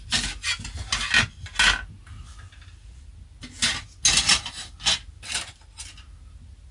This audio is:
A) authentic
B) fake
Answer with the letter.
A